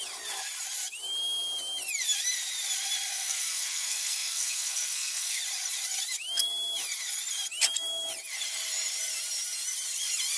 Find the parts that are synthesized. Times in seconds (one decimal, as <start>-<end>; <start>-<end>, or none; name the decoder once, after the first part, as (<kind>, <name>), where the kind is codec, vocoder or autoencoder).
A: 3.1-5.4 (codec, SNAC)